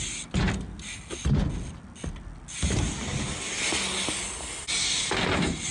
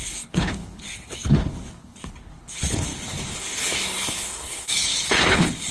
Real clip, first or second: first